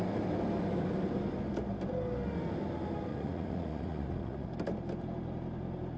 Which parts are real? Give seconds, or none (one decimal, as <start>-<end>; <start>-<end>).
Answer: 0.0-3.1; 4.5-6.0